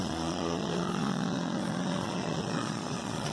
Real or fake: fake